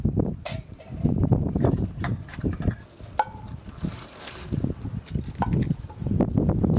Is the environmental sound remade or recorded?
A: recorded